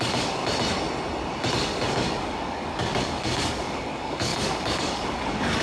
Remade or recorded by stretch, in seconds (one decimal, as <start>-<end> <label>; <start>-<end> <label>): 0.0-0.4 remade; 0.4-1.5 recorded; 1.5-5.6 remade